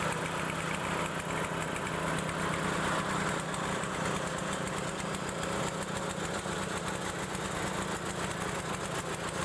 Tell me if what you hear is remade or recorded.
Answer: recorded